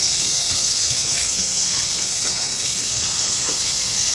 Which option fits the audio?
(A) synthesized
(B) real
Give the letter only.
A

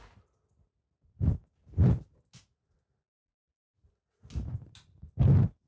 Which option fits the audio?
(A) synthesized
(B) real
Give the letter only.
B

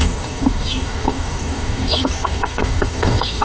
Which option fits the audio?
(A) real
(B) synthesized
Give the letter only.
B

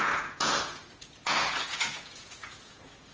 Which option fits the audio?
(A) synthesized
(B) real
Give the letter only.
A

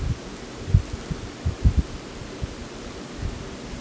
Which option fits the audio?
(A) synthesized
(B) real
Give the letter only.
B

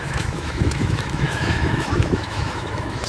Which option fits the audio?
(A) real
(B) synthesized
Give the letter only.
B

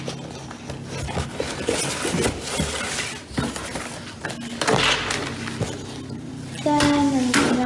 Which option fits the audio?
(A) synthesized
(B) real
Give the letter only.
B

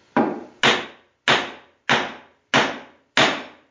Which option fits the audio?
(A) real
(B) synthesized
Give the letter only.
A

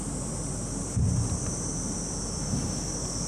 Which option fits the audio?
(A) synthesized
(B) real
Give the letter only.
B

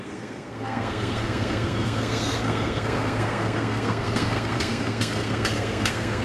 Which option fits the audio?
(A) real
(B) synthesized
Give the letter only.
B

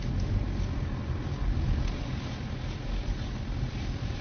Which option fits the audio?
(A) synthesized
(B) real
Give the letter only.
B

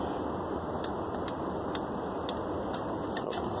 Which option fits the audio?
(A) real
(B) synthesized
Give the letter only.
A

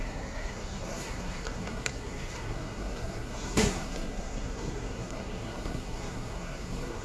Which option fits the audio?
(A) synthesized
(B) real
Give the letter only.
A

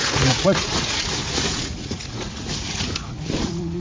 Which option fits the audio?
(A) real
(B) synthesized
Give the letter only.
B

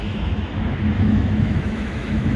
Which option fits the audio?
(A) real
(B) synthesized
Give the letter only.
B